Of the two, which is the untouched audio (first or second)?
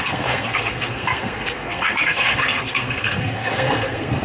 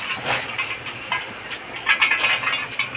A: second